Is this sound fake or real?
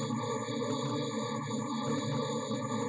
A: real